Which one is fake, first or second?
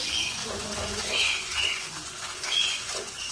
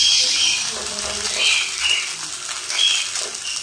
first